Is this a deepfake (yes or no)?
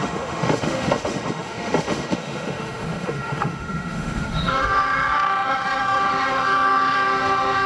yes